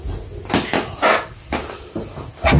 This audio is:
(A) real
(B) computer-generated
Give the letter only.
A